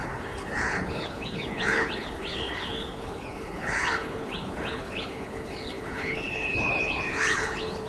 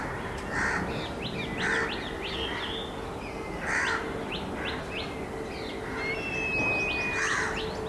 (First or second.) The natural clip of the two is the second